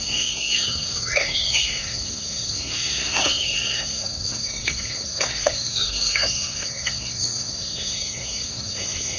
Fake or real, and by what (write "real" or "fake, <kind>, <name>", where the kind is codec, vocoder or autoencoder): fake, codec, SNAC